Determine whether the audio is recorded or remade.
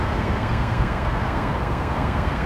remade